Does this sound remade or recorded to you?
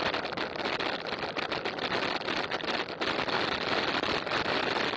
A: recorded